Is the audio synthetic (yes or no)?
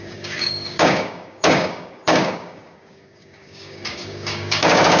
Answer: yes